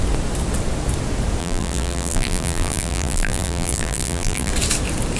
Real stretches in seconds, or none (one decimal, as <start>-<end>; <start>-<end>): 0.0-1.4; 4.5-5.2